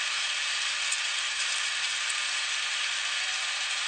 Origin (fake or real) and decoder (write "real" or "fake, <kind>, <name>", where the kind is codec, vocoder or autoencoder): fake, vocoder, BigVGAN v2